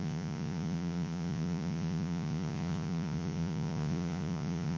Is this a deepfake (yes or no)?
yes